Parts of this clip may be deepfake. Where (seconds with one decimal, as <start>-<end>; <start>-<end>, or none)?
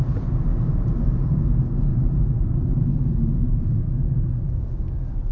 0.5-1.4; 1.9-4.5